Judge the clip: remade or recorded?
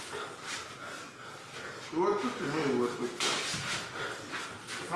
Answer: recorded